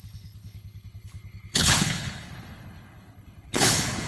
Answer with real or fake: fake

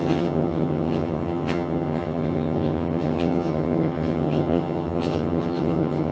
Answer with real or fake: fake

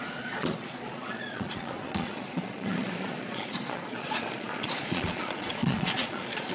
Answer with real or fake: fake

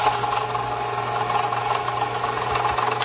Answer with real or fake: real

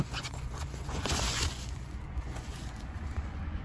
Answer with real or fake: fake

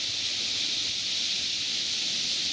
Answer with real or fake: real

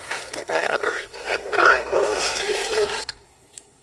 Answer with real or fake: fake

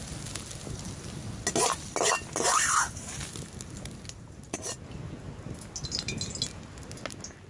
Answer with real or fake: real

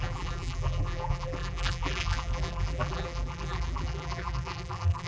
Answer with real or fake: fake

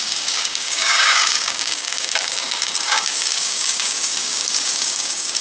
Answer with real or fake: fake